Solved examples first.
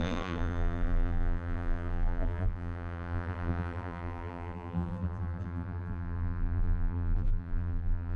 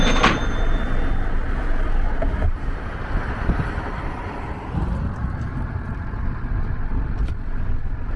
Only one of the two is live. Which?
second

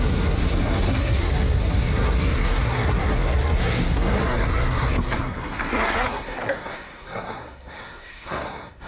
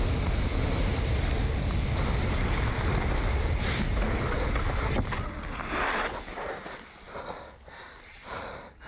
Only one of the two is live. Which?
second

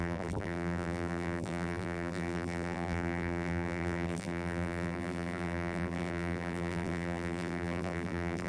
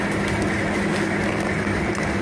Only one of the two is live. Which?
second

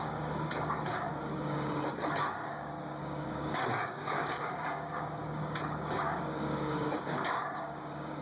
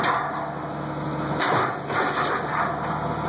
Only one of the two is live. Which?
second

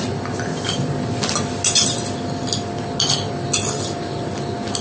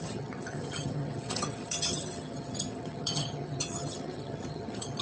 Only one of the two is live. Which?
first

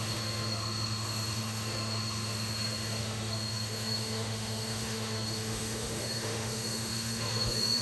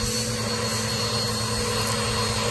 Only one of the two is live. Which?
second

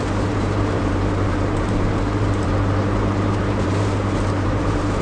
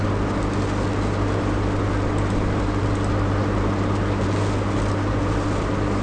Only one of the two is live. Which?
second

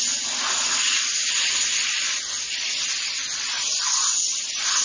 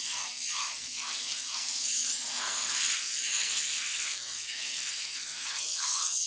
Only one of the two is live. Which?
first